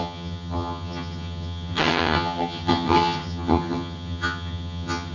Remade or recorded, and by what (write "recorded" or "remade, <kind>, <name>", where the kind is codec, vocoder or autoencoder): remade, vocoder, HiFi-GAN